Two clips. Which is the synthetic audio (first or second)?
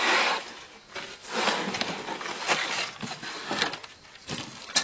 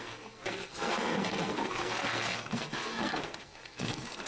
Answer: second